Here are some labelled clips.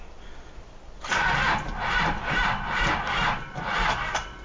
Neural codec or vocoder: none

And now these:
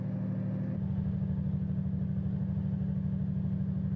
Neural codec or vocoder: none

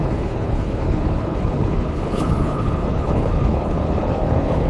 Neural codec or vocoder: codec, HILCodec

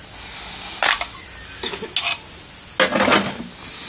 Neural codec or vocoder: none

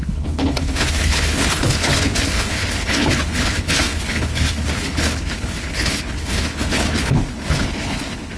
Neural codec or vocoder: codec, HILCodec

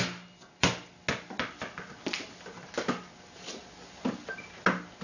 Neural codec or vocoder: none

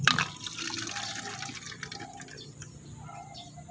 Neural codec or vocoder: none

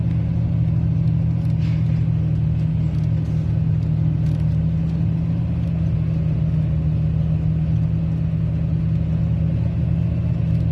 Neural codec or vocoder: none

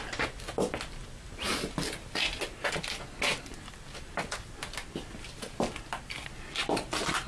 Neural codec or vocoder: none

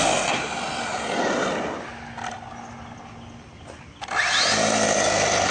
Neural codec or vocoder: none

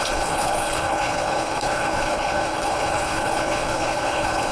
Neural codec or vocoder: codec, HILCodec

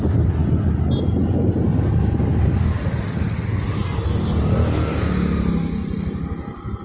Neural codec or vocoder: none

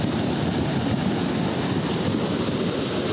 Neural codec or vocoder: none